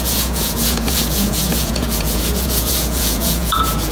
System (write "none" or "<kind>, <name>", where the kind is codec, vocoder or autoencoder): vocoder, Vocos